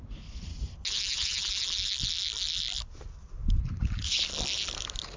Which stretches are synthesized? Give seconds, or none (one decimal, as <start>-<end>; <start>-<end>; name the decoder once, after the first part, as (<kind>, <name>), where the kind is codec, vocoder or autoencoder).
0.0-0.5 (codec, HILCodec); 3.6-4.3